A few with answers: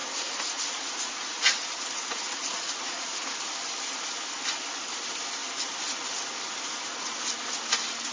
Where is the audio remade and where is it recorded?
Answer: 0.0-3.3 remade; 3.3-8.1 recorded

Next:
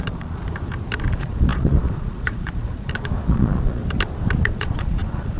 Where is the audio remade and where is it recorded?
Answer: 0.0-0.4 remade; 0.4-1.1 recorded; 1.1-3.8 remade; 3.8-4.4 recorded; 4.4-5.4 remade

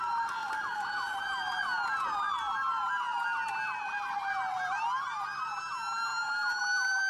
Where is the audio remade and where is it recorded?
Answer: 0.0-6.1 recorded; 6.1-7.1 remade

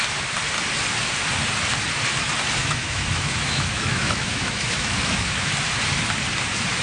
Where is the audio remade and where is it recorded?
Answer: 0.0-2.6 recorded; 2.6-5.5 remade; 5.5-6.8 recorded

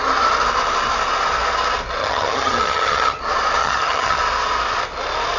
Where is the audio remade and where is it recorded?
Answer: 0.0-2.0 recorded; 2.0-3.2 remade; 3.2-3.6 recorded; 3.6-4.2 remade; 4.2-5.4 recorded

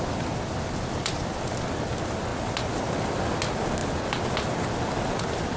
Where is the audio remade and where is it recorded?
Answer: 0.0-5.6 recorded

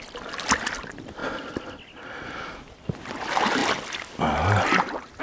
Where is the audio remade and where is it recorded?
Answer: 0.0-5.2 recorded